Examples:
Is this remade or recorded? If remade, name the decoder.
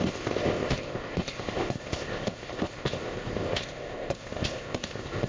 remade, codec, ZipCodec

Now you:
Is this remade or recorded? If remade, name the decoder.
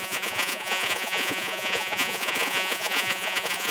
remade, vocoder, Vocos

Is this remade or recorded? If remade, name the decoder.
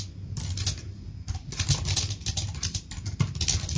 recorded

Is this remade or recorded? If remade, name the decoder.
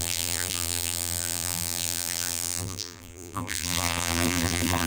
remade, vocoder, BigVGAN v2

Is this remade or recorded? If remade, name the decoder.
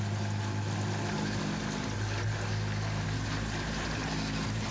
recorded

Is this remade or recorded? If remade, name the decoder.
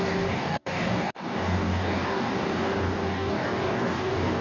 remade, codec, DAC